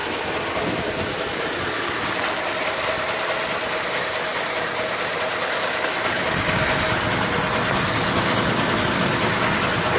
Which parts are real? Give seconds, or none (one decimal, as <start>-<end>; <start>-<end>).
0.0-10.0